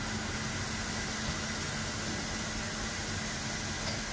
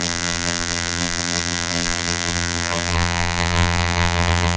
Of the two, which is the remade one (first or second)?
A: second